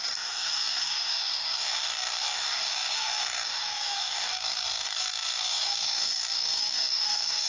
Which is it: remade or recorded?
remade